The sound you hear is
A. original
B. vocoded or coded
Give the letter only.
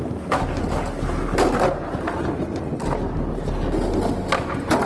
A